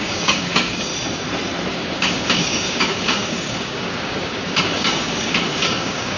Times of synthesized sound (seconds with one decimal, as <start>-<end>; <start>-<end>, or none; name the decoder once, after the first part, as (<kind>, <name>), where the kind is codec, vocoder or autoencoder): 0.0-0.9 (codec, DAC); 1.7-6.2